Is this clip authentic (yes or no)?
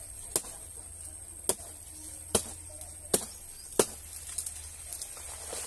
yes